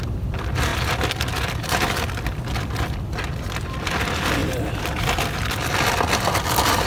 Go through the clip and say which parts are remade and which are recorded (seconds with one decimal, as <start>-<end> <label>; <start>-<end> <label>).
0.0-6.9 recorded